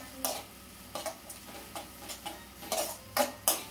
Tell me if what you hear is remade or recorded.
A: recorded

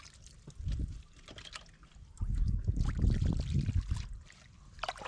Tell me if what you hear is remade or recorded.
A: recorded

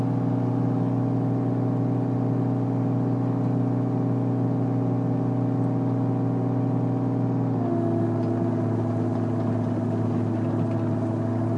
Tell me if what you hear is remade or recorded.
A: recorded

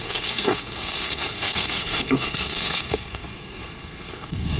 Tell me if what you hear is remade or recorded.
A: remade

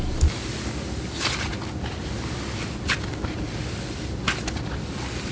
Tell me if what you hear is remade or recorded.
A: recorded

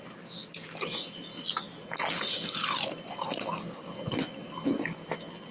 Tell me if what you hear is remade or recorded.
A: recorded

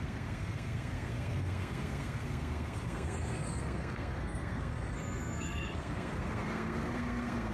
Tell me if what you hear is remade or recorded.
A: remade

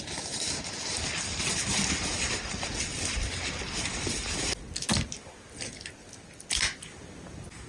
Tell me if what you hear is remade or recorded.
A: recorded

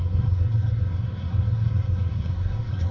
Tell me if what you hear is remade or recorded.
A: remade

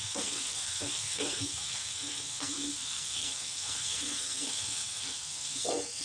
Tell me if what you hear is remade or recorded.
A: remade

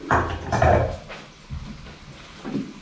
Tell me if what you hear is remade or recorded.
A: recorded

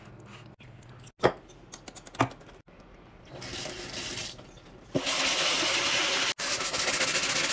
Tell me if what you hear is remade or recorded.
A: recorded